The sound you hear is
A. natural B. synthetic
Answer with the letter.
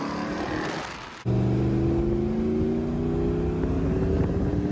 A